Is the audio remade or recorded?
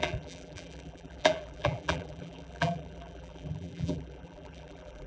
remade